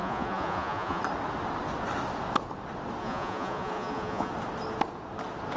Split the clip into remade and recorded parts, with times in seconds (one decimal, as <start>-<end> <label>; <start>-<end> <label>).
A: 0.0-1.0 remade; 1.0-3.0 recorded; 3.0-4.3 remade; 4.3-5.6 recorded